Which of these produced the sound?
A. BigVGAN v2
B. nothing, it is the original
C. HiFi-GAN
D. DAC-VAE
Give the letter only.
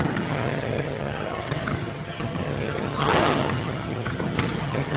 C